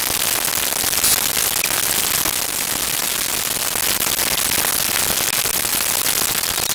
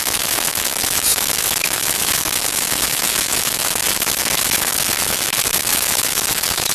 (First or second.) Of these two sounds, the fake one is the second